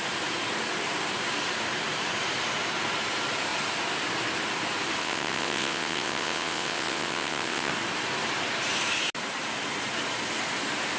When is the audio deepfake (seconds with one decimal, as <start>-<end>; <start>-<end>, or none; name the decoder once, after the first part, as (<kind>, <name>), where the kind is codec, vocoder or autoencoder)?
5.0-7.7 (vocoder, WaveNeXt)